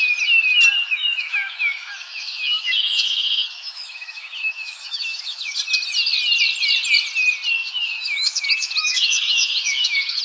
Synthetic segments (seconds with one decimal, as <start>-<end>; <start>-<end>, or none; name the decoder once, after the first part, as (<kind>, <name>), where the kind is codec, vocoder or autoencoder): 0.9-5.6 (autoencoder, DAC-VAE); 7.6-10.2